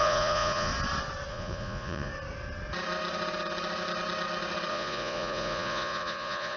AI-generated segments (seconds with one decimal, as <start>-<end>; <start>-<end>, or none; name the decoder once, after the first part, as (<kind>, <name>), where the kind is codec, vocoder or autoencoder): 0.0-0.7 (vocoder, Vocos); 1.3-2.1; 4.7-6.6